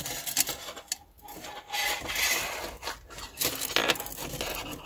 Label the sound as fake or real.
real